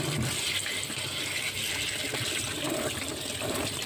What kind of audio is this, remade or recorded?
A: recorded